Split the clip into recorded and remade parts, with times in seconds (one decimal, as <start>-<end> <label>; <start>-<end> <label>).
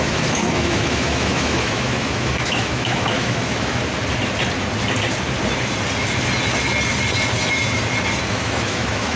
0.0-3.8 remade; 3.8-8.3 recorded; 8.3-9.2 remade